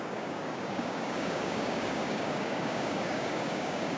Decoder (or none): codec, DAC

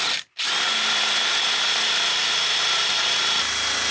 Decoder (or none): none